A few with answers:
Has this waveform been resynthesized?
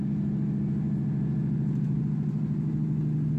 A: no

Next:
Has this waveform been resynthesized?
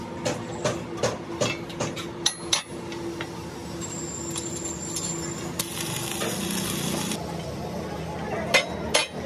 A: no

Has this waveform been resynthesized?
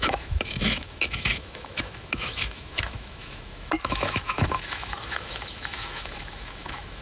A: yes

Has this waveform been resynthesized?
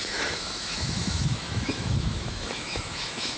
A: yes